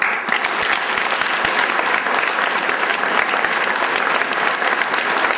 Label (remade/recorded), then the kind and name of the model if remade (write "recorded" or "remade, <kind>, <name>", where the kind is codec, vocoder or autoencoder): recorded